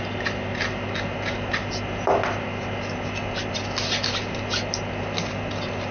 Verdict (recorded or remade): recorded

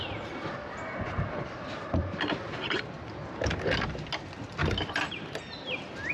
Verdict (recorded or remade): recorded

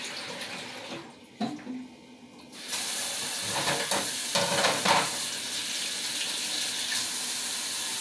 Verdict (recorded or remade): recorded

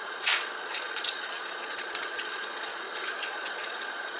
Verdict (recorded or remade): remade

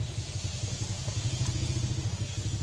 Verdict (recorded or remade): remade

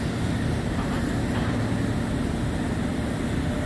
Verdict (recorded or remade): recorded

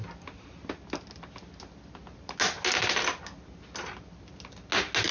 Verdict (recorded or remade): recorded